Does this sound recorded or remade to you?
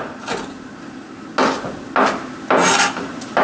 recorded